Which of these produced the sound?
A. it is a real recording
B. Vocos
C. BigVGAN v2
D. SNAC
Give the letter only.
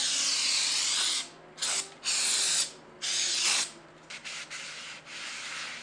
A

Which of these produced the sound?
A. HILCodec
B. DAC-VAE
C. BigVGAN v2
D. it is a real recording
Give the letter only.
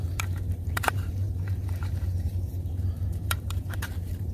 C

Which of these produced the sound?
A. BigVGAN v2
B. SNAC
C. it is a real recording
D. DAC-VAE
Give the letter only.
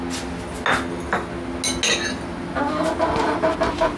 C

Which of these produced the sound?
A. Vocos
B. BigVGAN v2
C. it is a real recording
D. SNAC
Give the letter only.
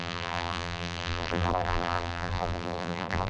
B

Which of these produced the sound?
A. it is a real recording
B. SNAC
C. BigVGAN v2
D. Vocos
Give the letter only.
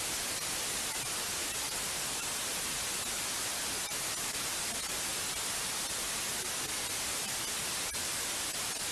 A